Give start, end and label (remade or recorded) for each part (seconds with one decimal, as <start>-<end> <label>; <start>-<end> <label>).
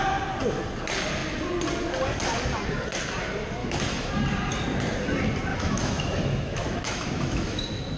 0.0-3.6 recorded; 3.6-4.1 remade; 4.1-5.5 recorded; 5.5-7.6 remade; 7.6-8.0 recorded